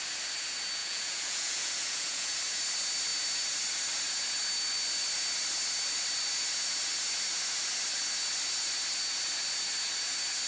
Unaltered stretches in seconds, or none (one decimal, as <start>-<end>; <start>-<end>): 0.0-0.8; 2.3-10.5